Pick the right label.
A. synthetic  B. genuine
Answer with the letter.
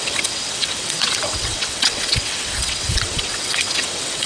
A